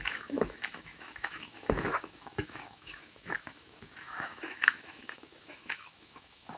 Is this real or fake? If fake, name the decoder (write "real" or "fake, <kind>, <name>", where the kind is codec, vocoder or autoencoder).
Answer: fake, autoencoder, DAC-VAE